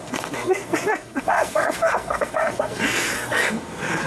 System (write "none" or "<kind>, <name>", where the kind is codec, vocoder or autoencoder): codec, SNAC